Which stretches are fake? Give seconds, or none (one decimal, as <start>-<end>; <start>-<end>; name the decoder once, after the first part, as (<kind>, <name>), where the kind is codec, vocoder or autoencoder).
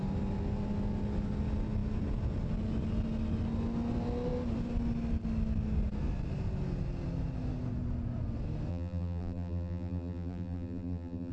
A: 8.7-11.3 (vocoder, BigVGAN v2)